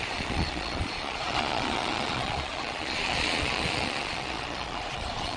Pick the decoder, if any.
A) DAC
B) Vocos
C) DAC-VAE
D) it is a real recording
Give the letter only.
B